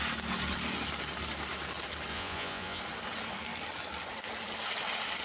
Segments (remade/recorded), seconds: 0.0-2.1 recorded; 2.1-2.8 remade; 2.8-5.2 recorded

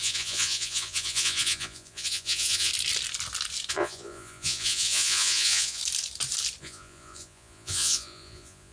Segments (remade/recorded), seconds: 0.0-2.7 remade; 2.7-3.7 recorded; 3.7-5.8 remade; 5.8-6.6 recorded; 6.6-8.7 remade

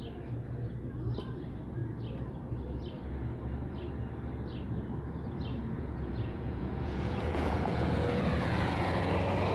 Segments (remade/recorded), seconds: 0.0-5.5 recorded; 5.5-9.1 remade; 9.1-9.5 recorded

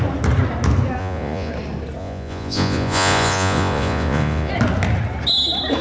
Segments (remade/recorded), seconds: 0.0-1.0 recorded; 1.0-1.5 remade; 1.5-2.0 recorded; 2.0-4.5 remade; 4.5-5.8 recorded

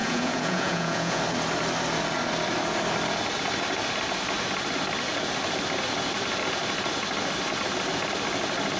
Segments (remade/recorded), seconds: 0.0-1.2 remade; 1.2-8.8 recorded

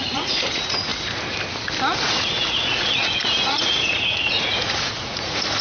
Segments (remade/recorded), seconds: 0.0-0.9 remade; 0.9-2.0 recorded; 2.0-5.6 remade

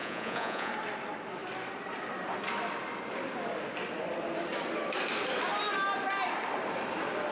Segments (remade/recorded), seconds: 0.0-0.7 remade; 0.7-7.3 recorded